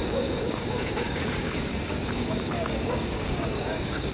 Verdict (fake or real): fake